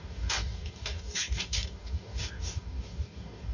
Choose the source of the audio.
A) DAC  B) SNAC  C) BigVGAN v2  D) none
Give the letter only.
A